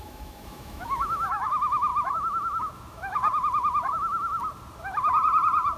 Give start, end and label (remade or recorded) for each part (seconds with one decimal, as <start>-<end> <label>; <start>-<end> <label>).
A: 0.0-1.9 remade; 1.9-2.6 recorded; 2.6-3.2 remade; 3.2-5.8 recorded